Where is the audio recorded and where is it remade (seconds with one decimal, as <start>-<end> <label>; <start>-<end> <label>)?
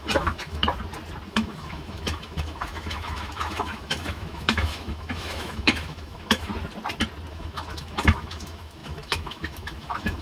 0.0-0.6 remade; 0.6-1.3 recorded; 1.3-6.5 remade; 6.5-7.3 recorded; 7.3-10.2 remade